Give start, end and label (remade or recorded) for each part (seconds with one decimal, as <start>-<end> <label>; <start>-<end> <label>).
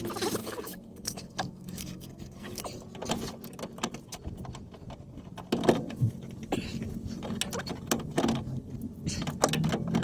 0.0-0.4 recorded; 0.4-2.6 remade; 2.6-10.0 recorded